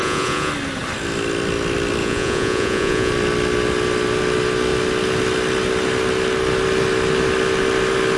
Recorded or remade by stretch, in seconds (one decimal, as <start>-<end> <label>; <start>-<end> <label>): 0.0-0.5 remade; 0.5-2.0 recorded; 2.0-3.1 remade; 3.1-8.2 recorded